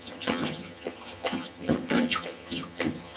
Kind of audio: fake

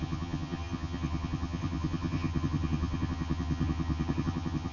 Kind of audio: fake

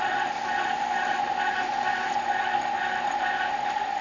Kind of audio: real